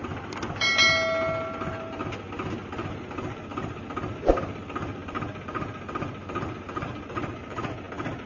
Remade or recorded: recorded